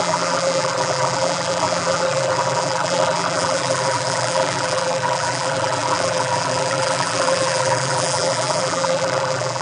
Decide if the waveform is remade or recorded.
remade